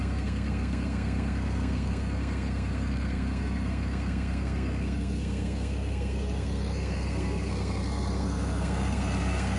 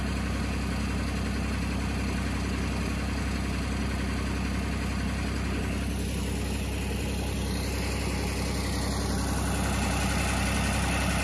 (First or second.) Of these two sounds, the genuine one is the second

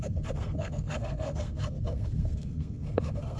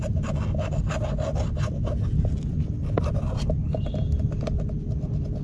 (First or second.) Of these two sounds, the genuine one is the second